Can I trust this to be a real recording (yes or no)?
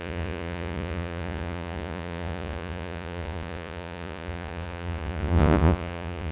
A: no